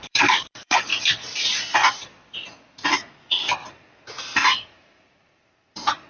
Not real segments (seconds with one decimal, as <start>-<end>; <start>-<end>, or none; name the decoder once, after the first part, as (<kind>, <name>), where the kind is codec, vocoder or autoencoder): 0.0-0.9 (vocoder, BigVGAN v2); 3.7-6.1